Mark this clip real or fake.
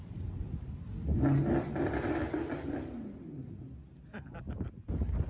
real